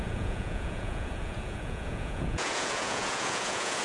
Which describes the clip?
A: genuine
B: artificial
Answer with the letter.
B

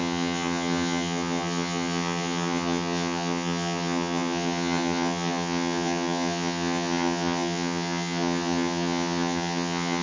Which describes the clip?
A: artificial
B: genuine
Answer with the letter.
A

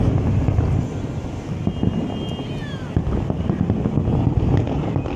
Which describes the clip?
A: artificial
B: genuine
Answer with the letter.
B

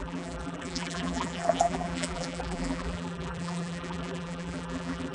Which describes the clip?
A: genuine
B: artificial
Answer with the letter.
B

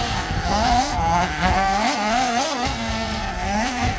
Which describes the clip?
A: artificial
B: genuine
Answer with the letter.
A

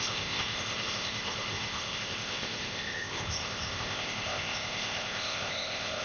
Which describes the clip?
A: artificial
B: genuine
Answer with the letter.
A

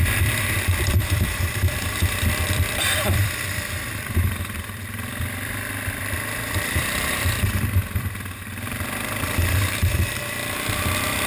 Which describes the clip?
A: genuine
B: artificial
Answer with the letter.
B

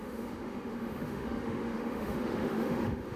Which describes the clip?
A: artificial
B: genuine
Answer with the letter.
A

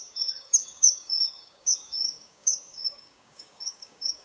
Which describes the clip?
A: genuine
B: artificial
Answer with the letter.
B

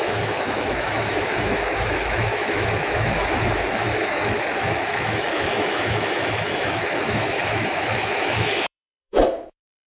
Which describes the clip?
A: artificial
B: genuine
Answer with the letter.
A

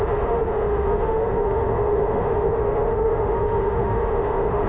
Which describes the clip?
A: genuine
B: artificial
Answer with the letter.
B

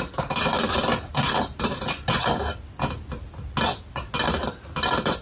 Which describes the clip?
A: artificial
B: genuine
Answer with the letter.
B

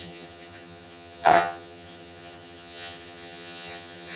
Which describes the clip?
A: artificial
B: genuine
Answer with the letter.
A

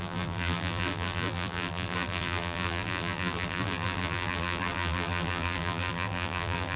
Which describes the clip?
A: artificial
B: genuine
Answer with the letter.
A